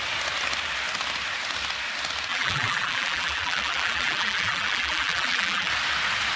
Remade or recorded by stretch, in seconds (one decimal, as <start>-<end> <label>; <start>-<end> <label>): 0.0-2.3 recorded; 2.3-5.7 remade; 5.7-6.4 recorded